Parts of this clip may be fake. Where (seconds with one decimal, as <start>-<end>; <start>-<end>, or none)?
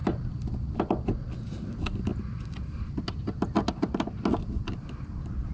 none